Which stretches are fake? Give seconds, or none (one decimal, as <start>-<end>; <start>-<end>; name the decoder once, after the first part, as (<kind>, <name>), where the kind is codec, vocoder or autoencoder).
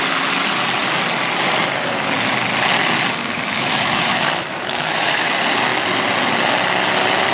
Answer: 3.2-5.3 (autoencoder, DAC-VAE)